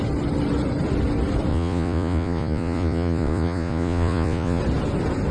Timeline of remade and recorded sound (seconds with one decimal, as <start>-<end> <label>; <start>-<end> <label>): 0.0-1.5 recorded; 1.5-4.6 remade; 4.6-5.3 recorded